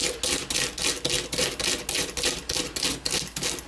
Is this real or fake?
real